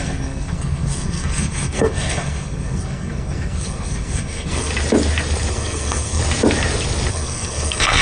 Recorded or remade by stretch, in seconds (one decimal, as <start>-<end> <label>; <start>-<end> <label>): 0.0-4.7 remade; 4.7-5.5 recorded; 5.5-6.2 remade; 6.2-7.1 recorded; 7.1-8.0 remade